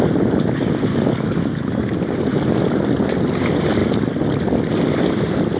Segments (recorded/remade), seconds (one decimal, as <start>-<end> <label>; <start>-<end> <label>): 0.0-0.9 recorded; 0.9-1.9 remade; 1.9-5.6 recorded